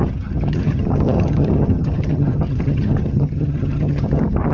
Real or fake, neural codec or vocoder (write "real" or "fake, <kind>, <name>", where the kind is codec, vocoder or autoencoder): fake, vocoder, HiFi-GAN